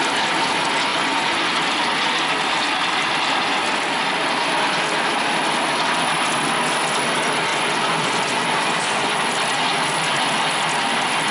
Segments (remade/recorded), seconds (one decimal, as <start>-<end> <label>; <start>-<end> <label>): 0.0-0.9 recorded; 0.9-1.5 remade; 1.5-7.5 recorded; 7.5-9.3 remade; 9.3-11.3 recorded